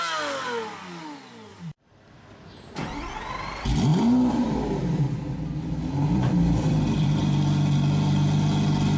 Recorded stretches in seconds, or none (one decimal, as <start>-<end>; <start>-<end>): 0.0-1.5; 2.9-3.9; 5.0-6.0; 7.2-9.0